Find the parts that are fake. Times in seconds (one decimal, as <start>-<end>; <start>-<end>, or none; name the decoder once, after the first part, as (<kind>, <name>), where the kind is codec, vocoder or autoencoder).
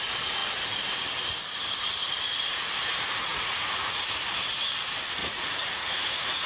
3.3-4.0 (vocoder, Vocos); 5.2-6.5